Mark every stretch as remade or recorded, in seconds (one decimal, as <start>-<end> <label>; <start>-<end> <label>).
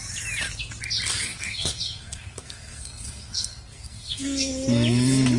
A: 0.0-1.3 recorded; 1.3-4.5 remade; 4.5-5.4 recorded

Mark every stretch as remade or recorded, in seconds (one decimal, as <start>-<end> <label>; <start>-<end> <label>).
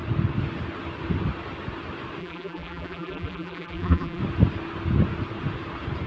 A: 0.0-2.2 recorded; 2.2-4.2 remade; 4.2-6.1 recorded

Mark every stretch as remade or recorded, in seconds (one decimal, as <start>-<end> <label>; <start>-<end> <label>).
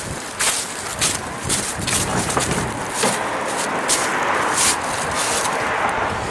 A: 0.0-0.9 recorded; 0.9-2.7 remade; 2.7-6.3 recorded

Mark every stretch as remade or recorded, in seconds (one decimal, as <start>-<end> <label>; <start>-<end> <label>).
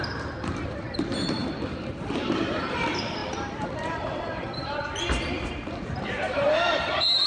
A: 0.0-7.3 remade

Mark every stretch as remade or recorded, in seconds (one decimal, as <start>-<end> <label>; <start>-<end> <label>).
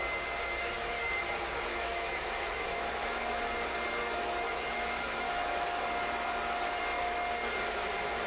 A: 0.0-1.7 recorded; 1.7-3.4 remade; 3.4-4.0 recorded; 4.0-5.8 remade; 5.8-8.3 recorded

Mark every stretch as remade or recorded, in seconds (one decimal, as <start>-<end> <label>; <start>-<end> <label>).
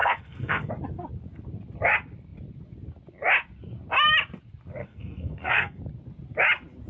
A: 0.0-0.7 remade; 0.7-4.8 recorded; 4.8-5.8 remade; 5.8-6.9 recorded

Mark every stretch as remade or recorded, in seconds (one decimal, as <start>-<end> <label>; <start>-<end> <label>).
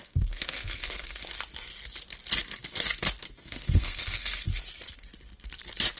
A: 0.0-1.2 remade; 1.2-3.2 recorded; 3.2-4.5 remade; 4.5-6.0 recorded